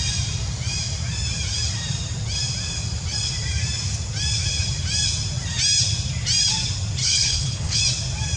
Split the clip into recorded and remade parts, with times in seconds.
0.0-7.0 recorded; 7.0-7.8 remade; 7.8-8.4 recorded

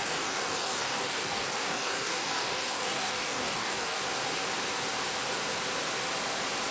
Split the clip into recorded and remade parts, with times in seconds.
0.0-4.0 remade; 4.0-6.7 recorded

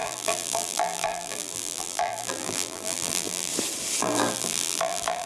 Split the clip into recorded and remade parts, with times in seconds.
0.0-3.5 remade; 3.5-4.0 recorded; 4.0-5.3 remade

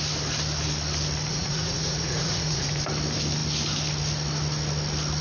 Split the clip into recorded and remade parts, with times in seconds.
0.0-1.3 recorded; 1.3-2.8 remade; 2.8-5.2 recorded

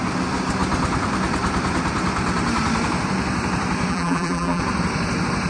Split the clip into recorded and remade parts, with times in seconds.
0.0-3.9 recorded; 3.9-4.6 remade; 4.6-5.5 recorded

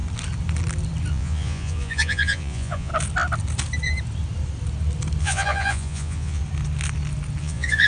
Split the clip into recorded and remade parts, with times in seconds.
0.0-1.1 recorded; 1.1-2.9 remade; 2.9-5.2 recorded; 5.2-6.4 remade; 6.4-7.4 recorded; 7.4-7.9 remade

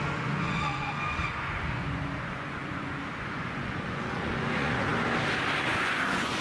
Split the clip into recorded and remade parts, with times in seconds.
0.0-4.9 remade; 4.9-5.6 recorded; 5.6-6.4 remade